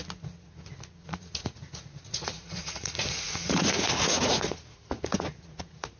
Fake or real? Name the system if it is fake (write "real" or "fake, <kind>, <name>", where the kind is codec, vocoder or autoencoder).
fake, vocoder, Vocos